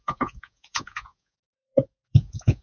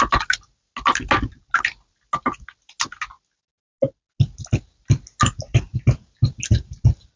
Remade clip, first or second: first